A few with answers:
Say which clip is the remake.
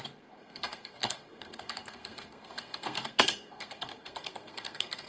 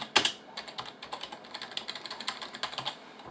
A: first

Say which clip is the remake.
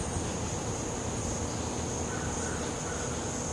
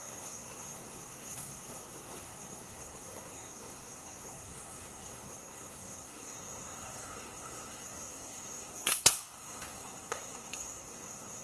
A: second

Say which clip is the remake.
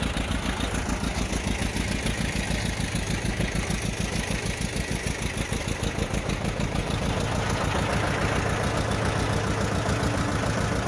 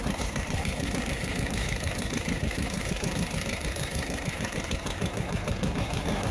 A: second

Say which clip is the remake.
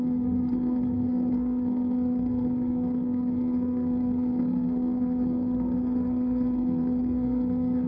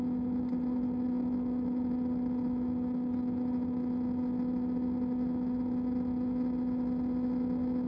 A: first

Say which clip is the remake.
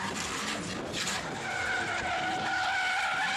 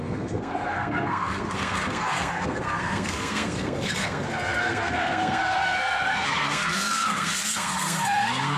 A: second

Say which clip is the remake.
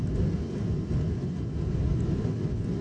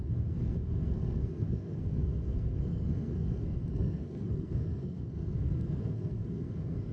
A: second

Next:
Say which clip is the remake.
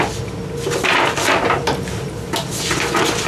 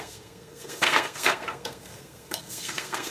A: second